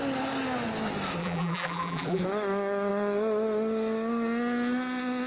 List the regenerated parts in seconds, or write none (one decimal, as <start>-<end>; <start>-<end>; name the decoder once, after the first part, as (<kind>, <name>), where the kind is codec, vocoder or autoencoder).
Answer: 1.2-2.2 (vocoder, BigVGAN v2)